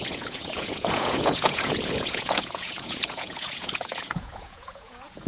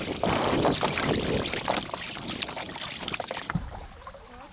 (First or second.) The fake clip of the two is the first